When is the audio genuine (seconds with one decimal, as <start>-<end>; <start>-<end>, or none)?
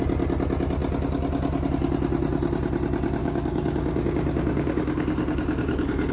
0.0-3.2